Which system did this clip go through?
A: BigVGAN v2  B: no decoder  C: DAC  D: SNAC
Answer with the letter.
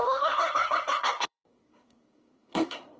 D